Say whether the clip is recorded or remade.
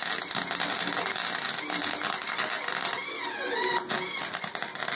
recorded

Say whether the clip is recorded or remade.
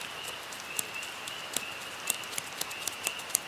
recorded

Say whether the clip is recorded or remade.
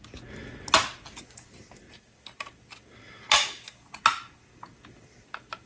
recorded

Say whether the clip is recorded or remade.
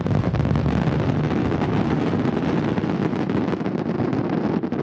recorded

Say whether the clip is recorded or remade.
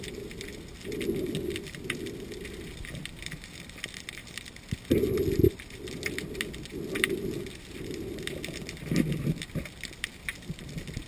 recorded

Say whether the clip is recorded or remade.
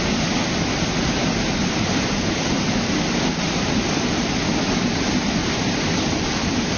recorded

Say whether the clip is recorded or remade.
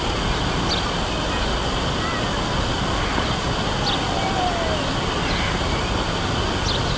recorded